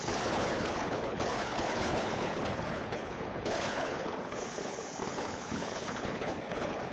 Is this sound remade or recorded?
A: remade